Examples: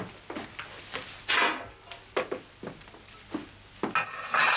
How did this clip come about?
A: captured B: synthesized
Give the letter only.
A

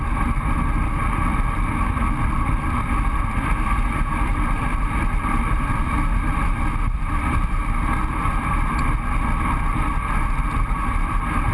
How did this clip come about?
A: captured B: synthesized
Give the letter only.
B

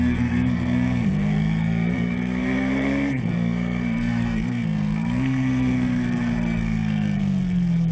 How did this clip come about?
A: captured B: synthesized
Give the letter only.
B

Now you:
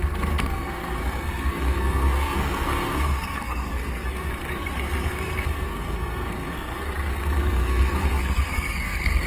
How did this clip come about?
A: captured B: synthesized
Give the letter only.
B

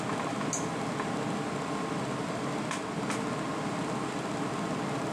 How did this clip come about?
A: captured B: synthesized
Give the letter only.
A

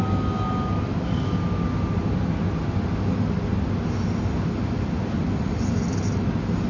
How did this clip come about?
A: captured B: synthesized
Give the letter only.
A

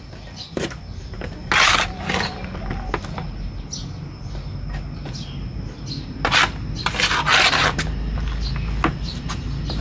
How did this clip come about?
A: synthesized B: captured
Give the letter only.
B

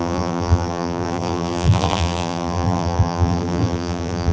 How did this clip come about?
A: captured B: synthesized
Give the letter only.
B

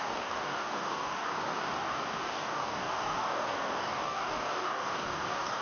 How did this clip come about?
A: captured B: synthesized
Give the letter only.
B